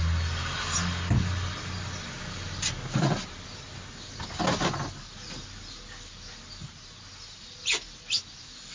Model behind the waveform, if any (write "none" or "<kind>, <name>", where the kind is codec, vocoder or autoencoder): none